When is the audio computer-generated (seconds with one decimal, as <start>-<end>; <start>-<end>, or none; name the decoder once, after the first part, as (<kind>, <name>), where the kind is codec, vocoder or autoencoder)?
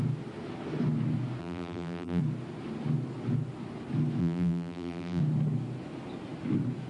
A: 1.4-2.2 (vocoder, BigVGAN v2); 4.2-5.2